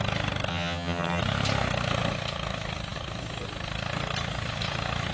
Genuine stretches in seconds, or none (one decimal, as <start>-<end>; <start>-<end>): 0.0-0.5; 1.2-5.1